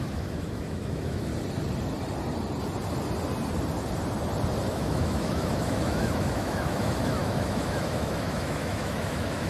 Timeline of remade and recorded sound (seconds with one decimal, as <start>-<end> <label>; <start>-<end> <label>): 0.0-1.3 remade; 1.3-4.7 recorded; 4.7-9.5 remade